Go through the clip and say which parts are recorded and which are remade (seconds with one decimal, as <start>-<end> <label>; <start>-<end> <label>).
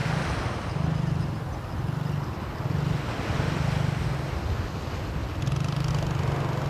0.0-5.2 recorded; 5.2-5.9 remade; 5.9-6.7 recorded